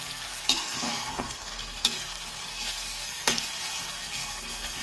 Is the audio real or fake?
fake